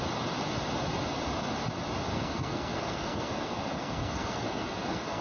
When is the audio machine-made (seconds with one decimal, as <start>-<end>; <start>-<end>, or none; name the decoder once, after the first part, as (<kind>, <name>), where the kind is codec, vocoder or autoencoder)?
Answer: 2.1-5.2 (codec, SNAC)